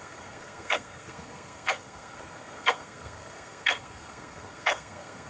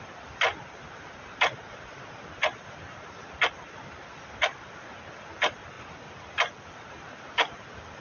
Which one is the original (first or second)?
second